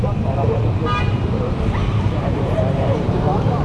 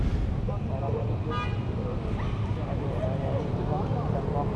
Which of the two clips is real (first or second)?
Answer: second